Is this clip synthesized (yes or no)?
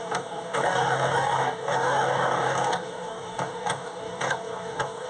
yes